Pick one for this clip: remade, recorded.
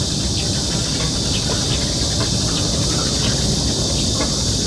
recorded